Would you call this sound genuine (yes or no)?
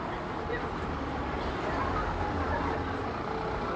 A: yes